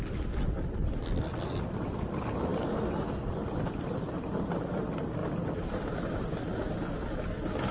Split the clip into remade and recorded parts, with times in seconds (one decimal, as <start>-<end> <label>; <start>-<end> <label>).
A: 0.0-7.7 recorded